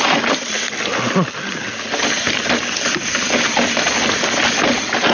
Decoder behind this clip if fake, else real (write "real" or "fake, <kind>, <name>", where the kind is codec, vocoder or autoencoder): real